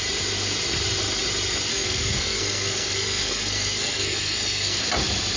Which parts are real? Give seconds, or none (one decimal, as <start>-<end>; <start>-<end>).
0.0-1.7; 4.8-5.4